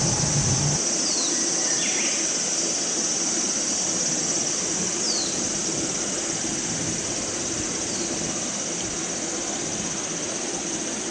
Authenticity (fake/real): real